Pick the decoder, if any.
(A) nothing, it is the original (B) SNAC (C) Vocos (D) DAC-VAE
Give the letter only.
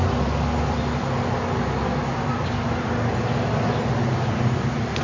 A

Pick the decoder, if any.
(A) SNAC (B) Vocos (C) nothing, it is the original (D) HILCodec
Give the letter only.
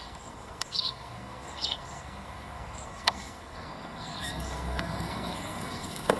A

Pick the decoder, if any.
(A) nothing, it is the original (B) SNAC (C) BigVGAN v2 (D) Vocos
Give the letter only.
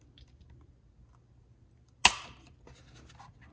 A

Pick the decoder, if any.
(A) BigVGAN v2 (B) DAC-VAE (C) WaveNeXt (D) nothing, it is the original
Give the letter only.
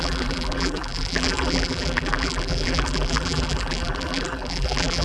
A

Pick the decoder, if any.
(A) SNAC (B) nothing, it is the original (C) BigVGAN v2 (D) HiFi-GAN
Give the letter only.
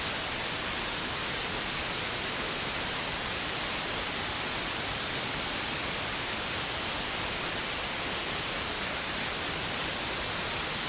B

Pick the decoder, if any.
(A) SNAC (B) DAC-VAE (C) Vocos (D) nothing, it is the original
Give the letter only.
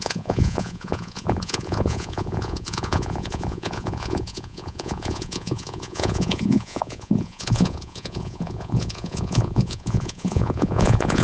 C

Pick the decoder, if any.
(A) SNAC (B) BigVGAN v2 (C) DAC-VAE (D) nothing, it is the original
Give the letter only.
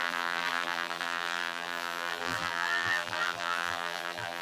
B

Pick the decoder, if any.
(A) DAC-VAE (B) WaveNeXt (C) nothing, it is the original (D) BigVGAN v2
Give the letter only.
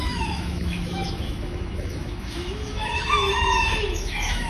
A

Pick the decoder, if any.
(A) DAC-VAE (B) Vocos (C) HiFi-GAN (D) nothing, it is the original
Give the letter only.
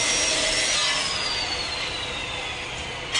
D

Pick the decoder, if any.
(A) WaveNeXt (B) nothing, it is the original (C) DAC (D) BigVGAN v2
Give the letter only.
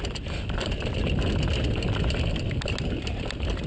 B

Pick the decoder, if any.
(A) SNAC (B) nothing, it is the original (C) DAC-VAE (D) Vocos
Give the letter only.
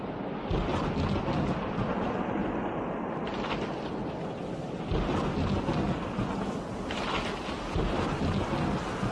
B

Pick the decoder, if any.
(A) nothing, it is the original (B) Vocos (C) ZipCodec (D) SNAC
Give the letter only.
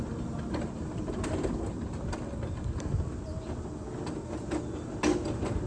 A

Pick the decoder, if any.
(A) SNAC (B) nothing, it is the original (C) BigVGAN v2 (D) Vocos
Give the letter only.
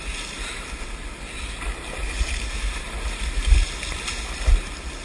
B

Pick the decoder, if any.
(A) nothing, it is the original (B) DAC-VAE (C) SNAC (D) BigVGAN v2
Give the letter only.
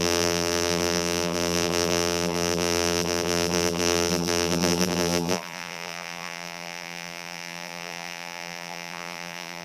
D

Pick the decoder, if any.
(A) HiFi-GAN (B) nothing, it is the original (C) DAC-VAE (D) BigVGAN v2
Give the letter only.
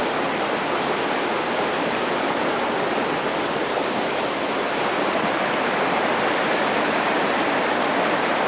D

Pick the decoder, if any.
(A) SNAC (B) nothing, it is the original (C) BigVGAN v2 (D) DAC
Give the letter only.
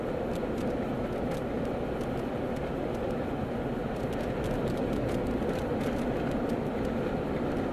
B